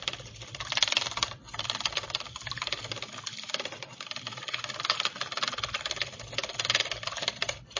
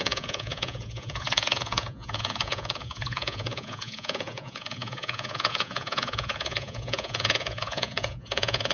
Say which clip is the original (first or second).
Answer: first